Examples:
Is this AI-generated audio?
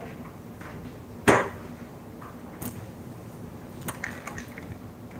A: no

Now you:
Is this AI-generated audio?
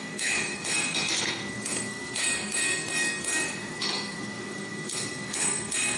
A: yes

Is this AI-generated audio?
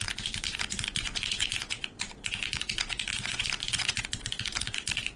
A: yes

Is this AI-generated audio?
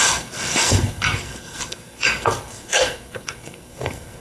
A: yes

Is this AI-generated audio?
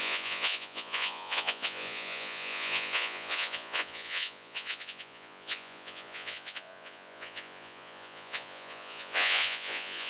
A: yes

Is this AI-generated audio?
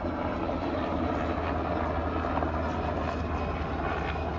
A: no